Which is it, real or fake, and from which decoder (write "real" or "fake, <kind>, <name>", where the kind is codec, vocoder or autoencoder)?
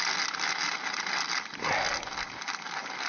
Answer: real